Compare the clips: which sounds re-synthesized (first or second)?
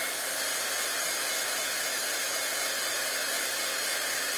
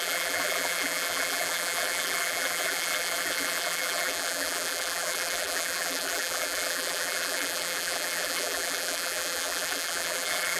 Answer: second